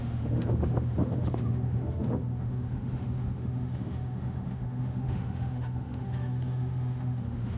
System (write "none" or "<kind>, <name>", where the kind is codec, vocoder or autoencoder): autoencoder, DAC-VAE